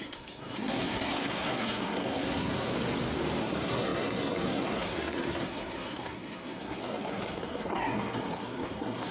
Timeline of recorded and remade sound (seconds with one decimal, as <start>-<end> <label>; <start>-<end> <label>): 0.0-2.7 remade; 2.7-3.4 recorded; 3.4-9.1 remade